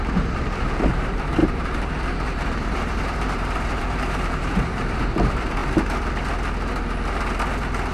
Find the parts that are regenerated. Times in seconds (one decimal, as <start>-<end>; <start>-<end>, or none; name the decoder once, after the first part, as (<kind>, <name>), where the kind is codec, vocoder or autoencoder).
0.0-5.6 (vocoder, BigVGAN v2)